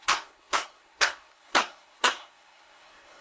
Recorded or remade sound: remade